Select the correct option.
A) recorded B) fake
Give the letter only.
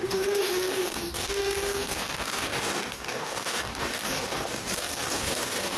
B